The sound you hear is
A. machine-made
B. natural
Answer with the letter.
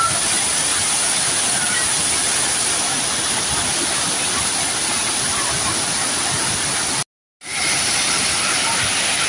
B